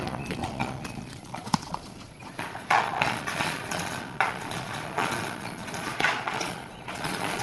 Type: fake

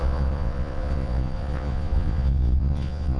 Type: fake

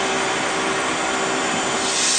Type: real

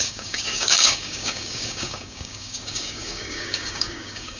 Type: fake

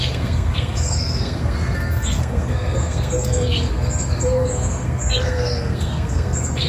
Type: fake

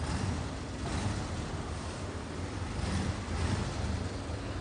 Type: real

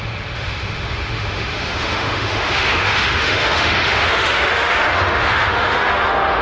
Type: fake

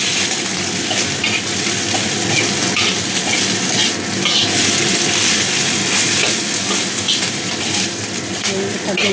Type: real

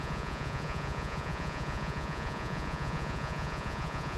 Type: fake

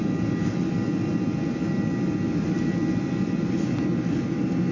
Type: real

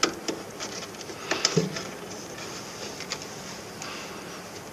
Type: real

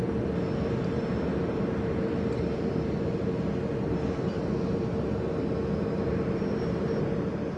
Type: real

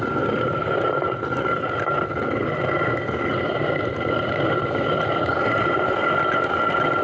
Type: real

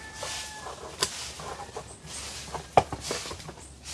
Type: real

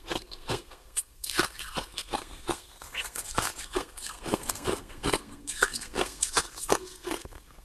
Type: fake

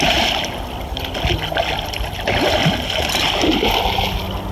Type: real